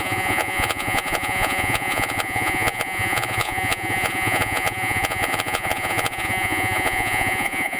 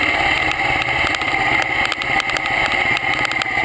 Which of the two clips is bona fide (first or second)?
second